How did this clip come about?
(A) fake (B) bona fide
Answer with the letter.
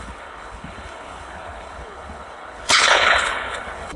A